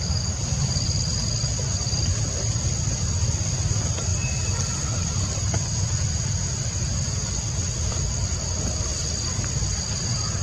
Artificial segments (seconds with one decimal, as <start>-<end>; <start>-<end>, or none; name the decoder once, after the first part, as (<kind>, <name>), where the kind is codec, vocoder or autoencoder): none